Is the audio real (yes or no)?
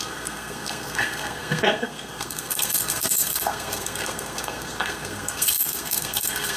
no